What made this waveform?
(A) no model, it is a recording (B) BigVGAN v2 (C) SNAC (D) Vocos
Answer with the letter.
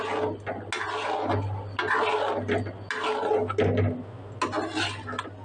A